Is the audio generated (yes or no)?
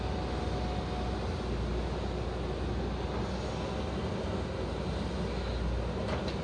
no